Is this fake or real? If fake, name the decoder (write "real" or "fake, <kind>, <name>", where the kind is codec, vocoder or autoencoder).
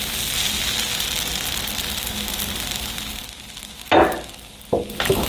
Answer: real